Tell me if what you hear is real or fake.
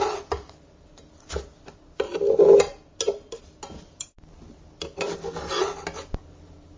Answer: real